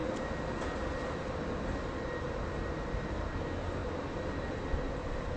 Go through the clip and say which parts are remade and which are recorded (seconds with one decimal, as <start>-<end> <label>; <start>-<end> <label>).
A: 0.0-5.4 recorded